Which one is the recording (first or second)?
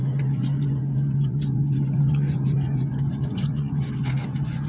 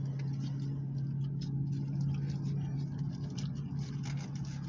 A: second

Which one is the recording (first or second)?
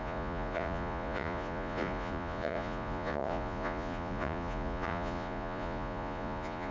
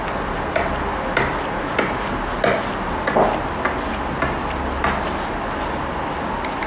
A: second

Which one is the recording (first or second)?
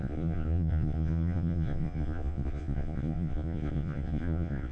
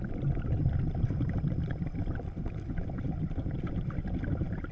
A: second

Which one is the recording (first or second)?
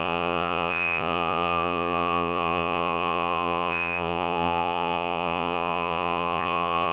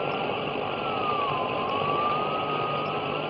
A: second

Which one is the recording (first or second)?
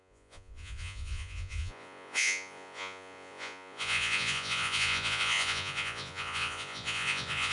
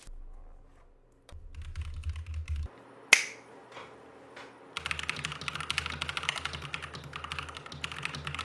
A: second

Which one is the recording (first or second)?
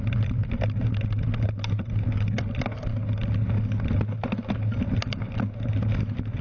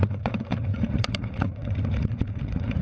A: first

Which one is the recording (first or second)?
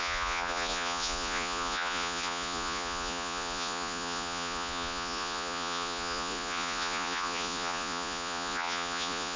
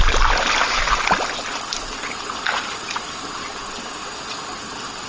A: second